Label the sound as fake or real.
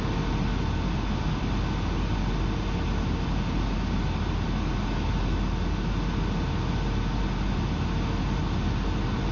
real